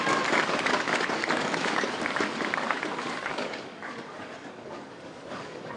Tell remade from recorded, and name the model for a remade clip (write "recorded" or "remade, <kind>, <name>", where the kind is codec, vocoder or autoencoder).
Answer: remade, codec, DAC